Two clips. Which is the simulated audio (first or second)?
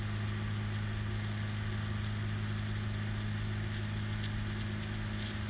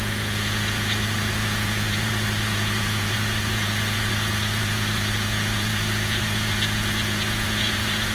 second